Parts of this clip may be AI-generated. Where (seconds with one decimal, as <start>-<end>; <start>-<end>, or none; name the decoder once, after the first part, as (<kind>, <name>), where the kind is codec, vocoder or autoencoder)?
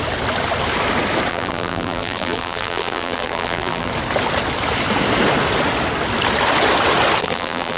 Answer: 1.3-3.9 (vocoder, BigVGAN v2); 7.2-7.8